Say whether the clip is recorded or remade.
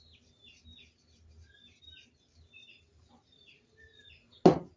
recorded